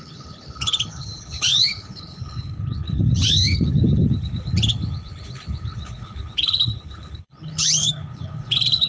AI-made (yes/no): yes